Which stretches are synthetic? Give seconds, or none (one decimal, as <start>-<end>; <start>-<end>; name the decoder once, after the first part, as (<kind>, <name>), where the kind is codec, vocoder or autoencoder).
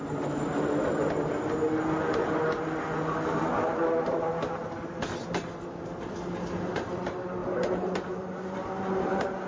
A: none